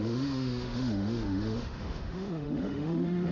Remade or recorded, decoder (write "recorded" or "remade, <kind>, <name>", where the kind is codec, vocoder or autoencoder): remade, autoencoder, DAC-VAE